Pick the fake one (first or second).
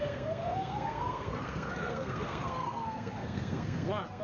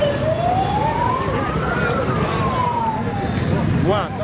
first